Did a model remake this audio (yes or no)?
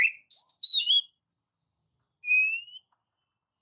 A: no